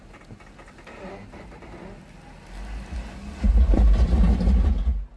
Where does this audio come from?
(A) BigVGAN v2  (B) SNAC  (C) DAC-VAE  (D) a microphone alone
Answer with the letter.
D